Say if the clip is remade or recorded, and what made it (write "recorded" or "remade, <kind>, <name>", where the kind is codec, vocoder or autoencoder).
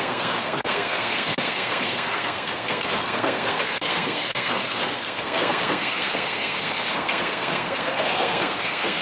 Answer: remade, codec, SNAC